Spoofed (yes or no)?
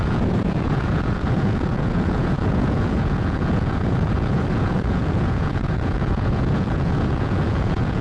yes